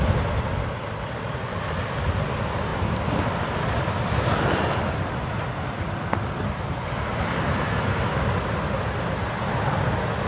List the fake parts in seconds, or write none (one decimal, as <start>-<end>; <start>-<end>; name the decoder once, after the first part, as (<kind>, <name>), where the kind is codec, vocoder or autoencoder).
none